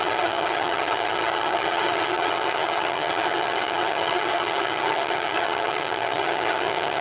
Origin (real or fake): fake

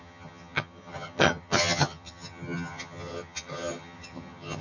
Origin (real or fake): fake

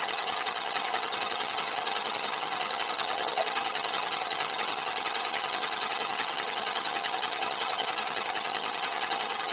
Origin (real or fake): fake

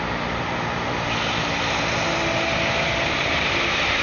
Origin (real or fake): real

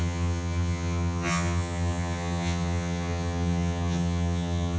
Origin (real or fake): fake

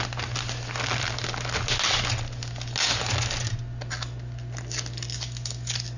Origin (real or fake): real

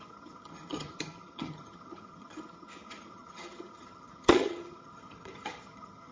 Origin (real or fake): fake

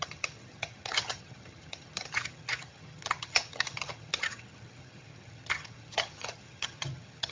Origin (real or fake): fake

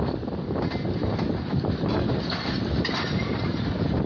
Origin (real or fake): real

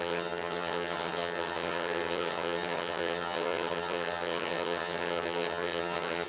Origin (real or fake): fake